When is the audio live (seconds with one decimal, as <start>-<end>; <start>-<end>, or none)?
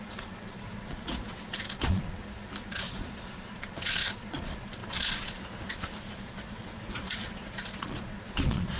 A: 2.2-2.7